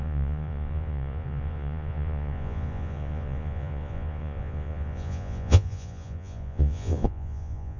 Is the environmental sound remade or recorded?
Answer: remade